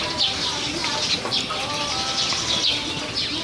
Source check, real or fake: real